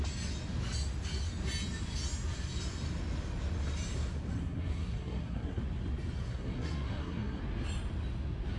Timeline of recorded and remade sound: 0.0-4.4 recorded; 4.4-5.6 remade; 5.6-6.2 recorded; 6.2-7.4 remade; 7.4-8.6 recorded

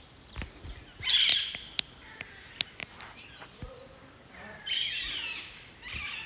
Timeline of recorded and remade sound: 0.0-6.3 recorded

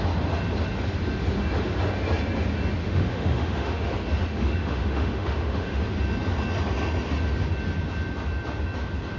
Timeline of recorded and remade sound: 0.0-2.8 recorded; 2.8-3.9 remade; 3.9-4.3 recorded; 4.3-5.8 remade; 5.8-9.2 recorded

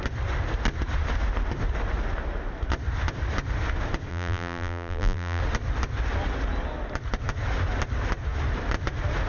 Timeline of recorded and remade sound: 0.0-4.1 recorded; 4.1-5.4 remade; 5.4-9.3 recorded

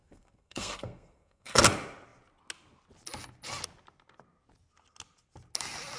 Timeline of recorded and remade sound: 0.0-1.6 remade; 1.6-6.0 recorded